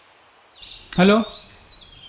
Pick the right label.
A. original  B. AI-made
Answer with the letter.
A